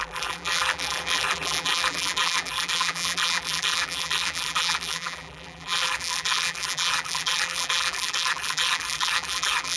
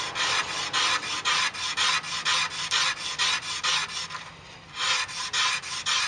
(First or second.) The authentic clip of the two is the second